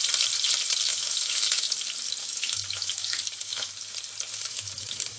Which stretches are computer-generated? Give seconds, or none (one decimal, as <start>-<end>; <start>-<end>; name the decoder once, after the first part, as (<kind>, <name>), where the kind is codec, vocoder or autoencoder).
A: 0.9-1.7 (autoencoder, DAC-VAE); 2.2-3.7; 4.3-5.2